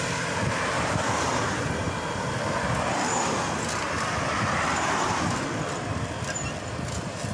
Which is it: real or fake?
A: real